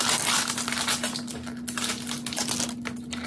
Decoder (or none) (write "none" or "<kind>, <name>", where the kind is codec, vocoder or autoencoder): none